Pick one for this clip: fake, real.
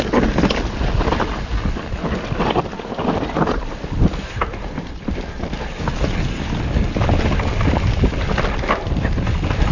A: real